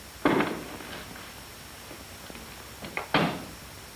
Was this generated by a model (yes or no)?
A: no